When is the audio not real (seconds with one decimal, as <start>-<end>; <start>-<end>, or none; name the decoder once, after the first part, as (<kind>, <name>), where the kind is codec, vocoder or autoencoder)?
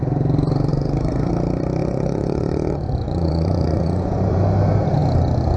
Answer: 0.7-1.3 (vocoder, Vocos); 1.8-4.4